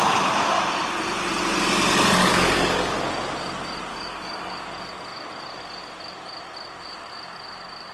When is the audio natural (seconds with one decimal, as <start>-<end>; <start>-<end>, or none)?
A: 0.0-2.2; 3.1-3.9; 4.5-7.9